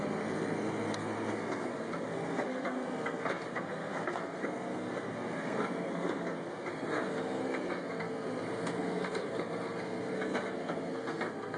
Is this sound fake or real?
fake